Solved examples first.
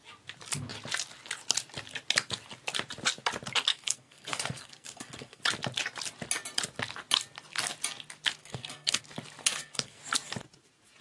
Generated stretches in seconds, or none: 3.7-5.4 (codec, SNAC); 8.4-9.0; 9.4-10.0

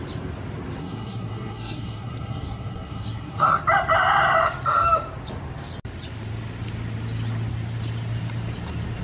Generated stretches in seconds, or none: 0.8-3.6 (codec, SNAC)

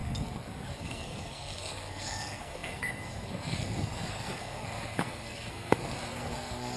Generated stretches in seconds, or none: 0.0-6.8 (codec, SNAC)

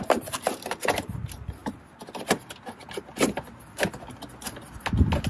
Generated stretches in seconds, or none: none

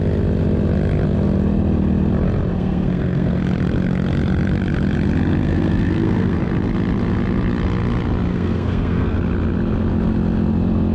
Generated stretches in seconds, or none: 2.5-3.4 (codec, SNAC); 5.4-6.5; 8.3-9.2

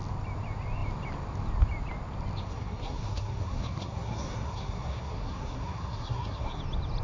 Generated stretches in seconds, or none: 2.4-6.6 (codec, SNAC)

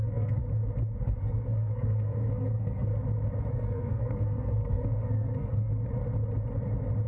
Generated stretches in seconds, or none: 0.0-0.4 (codec, SNAC); 1.0-2.9; 3.5-5.7